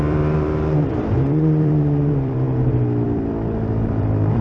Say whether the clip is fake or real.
fake